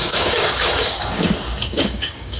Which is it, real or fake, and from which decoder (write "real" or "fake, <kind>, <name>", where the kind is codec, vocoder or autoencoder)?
fake, codec, DAC